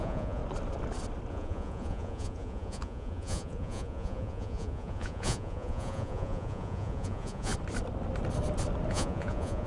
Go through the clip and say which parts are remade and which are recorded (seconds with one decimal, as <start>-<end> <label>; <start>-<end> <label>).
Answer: 0.0-0.4 remade; 0.4-1.3 recorded; 1.3-7.5 remade; 7.5-8.9 recorded; 8.9-9.7 remade